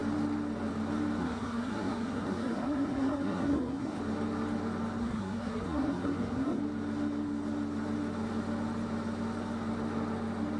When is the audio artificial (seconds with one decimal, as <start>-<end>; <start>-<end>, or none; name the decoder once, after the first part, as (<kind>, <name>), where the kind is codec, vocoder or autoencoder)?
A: 1.2-4.0 (codec, SNAC); 5.0-6.6